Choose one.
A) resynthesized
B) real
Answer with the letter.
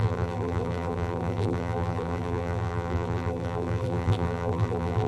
A